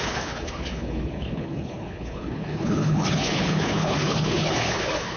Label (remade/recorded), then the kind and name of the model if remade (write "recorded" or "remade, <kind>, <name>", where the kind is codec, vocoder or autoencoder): remade, codec, HILCodec